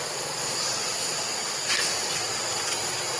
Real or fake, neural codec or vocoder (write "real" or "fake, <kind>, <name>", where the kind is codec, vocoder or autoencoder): real